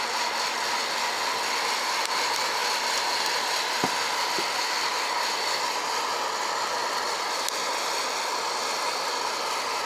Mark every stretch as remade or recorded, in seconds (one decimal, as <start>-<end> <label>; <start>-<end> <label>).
0.0-9.9 recorded